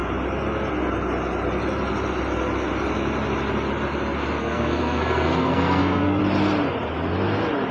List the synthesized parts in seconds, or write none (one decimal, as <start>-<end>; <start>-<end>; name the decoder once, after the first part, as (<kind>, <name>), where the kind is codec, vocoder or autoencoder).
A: 4.4-6.2 (codec, SNAC)